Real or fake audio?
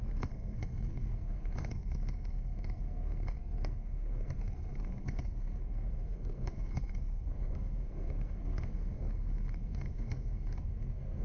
fake